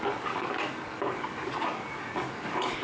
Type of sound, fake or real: fake